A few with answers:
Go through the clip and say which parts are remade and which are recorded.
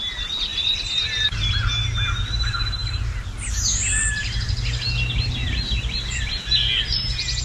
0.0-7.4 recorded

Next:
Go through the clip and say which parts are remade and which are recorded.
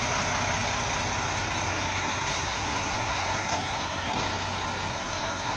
0.0-1.7 recorded; 1.7-4.2 remade; 4.2-4.9 recorded; 4.9-5.6 remade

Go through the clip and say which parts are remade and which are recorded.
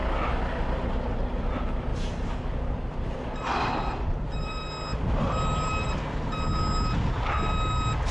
0.0-8.1 recorded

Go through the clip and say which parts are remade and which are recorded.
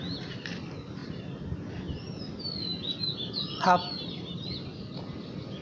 0.0-5.6 recorded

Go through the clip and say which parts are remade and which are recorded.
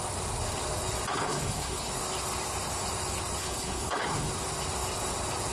0.0-1.1 recorded; 1.1-1.9 remade; 1.9-3.4 recorded; 3.4-4.3 remade; 4.3-5.5 recorded